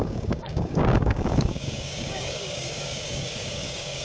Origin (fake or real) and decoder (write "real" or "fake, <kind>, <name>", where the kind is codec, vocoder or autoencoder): fake, codec, DAC